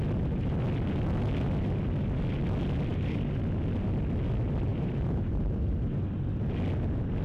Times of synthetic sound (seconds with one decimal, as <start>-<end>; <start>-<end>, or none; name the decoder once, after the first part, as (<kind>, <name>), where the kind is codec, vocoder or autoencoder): 2.9-3.4 (vocoder, BigVGAN v2); 4.7-5.8